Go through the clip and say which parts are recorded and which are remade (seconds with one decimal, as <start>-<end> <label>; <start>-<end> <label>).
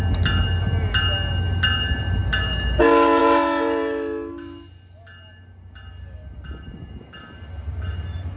0.0-8.4 recorded